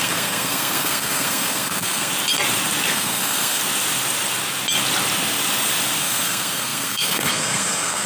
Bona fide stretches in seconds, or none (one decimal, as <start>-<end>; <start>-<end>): 2.1-2.9; 3.6-6.0